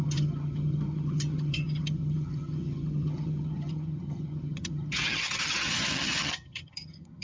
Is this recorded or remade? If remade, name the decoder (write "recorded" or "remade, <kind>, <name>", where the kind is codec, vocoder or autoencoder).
remade, vocoder, HiFi-GAN